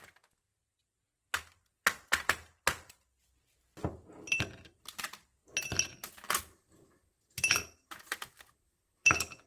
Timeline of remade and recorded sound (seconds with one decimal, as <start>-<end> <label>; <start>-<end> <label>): 0.0-9.5 recorded